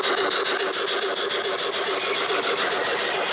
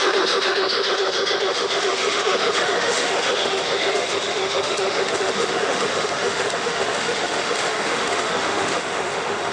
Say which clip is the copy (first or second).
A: second